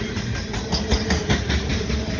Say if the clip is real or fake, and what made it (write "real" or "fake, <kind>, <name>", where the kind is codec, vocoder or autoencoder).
real